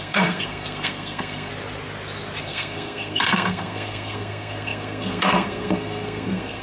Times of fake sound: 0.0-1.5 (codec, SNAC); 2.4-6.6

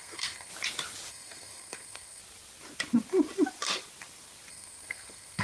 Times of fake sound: 0.0-0.5 (codec, SNAC); 1.1-2.2; 4.5-5.4

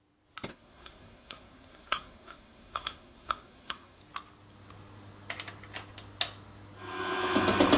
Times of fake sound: 0.5-4.0 (codec, SNAC)